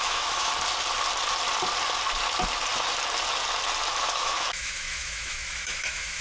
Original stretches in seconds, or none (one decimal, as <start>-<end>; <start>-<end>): 0.5-4.0